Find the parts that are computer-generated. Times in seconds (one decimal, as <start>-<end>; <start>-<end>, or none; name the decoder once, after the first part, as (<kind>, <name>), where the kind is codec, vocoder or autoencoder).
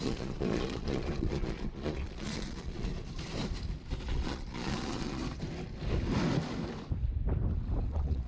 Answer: 0.0-2.9 (vocoder, Vocos); 4.1-5.2; 7.9-8.3